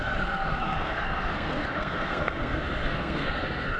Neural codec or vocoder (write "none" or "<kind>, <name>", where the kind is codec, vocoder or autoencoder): codec, SNAC